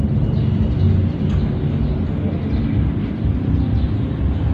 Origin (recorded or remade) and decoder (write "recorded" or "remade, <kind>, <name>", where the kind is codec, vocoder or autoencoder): recorded